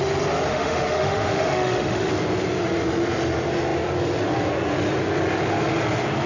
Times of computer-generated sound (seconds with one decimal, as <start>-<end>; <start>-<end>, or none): 0.5-2.1